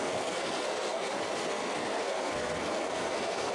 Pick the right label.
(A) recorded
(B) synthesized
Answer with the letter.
B